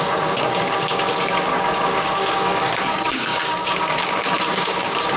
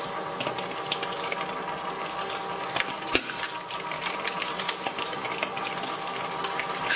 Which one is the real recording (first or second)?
second